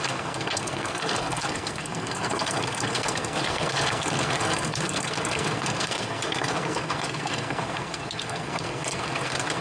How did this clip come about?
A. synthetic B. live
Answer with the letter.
A